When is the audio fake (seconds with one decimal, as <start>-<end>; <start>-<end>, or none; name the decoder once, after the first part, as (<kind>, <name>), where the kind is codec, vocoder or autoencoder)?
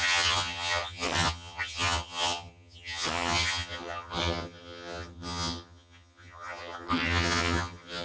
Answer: 0.0-8.0 (vocoder, HiFi-GAN)